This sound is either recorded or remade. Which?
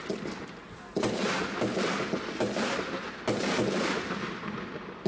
recorded